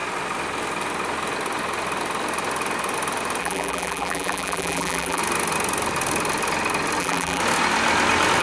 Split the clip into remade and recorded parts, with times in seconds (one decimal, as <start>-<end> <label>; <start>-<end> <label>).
0.0-3.4 recorded; 3.4-5.2 remade; 5.2-7.0 recorded; 7.0-7.4 remade; 7.4-8.4 recorded